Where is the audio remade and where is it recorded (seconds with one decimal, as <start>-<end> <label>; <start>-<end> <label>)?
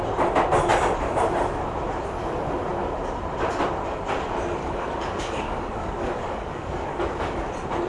0.0-4.6 recorded; 4.6-7.5 remade; 7.5-7.9 recorded